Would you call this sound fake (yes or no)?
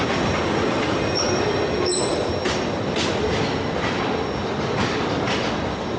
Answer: no